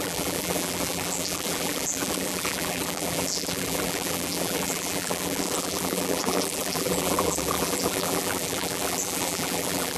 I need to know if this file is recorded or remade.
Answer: remade